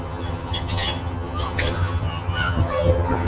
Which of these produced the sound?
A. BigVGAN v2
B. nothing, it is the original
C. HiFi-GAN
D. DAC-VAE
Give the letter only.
C